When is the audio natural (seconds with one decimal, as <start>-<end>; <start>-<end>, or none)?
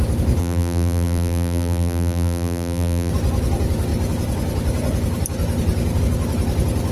0.0-0.4; 3.1-6.9